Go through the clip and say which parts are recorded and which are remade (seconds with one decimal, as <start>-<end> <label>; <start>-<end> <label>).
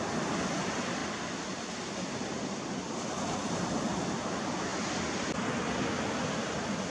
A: 0.0-6.9 recorded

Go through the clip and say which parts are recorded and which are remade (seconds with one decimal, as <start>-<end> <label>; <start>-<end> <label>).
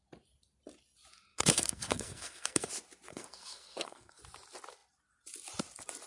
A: 0.0-1.3 recorded; 1.3-2.7 remade; 2.7-3.1 recorded; 3.1-4.2 remade; 4.2-6.1 recorded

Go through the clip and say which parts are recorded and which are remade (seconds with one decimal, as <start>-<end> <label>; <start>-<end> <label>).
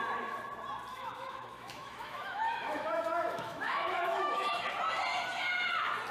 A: 0.0-0.9 recorded; 0.9-4.6 remade; 4.6-6.1 recorded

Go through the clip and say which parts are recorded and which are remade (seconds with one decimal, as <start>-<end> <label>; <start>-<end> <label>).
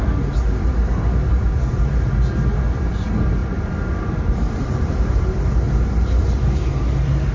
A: 0.0-1.3 recorded; 1.3-2.9 remade; 2.9-3.4 recorded; 3.4-7.3 remade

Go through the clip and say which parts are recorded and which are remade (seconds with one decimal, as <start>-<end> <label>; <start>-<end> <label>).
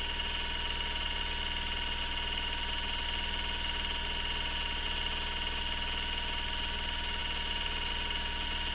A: 0.0-8.7 recorded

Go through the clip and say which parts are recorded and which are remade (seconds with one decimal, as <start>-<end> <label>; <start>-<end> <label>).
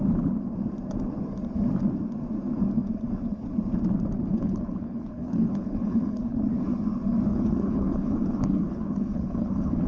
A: 0.0-4.3 recorded; 4.3-6.4 remade; 6.4-7.3 recorded; 7.3-9.9 remade